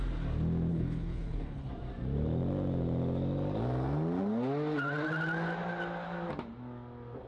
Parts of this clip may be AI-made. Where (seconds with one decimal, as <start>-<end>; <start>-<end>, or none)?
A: 0.7-1.7

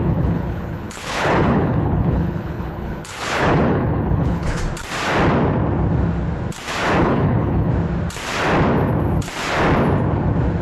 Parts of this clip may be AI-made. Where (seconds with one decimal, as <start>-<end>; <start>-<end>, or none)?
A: 0.0-4.6; 7.0-7.7

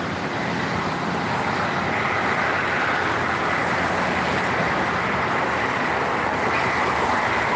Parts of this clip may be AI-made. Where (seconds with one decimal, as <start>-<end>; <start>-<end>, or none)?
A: none

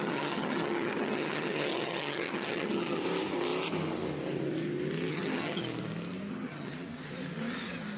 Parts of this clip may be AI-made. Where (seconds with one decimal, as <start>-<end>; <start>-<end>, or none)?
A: 0.0-3.0; 5.1-5.6; 6.3-6.7

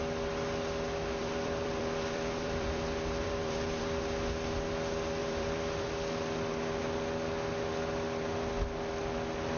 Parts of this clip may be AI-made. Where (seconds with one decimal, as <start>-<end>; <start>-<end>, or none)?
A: 1.2-3.8; 5.2-5.9

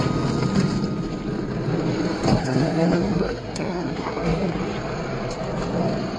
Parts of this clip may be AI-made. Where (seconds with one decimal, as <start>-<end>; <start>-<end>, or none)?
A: 2.4-4.6